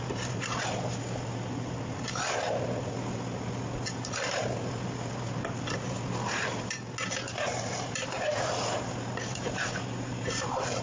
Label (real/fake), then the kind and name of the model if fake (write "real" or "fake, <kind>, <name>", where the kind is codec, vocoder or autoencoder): real